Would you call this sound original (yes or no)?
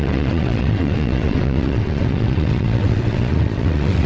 no